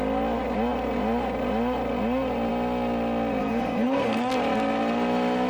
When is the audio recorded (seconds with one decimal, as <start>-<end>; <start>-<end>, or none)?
0.0-3.4; 4.3-5.5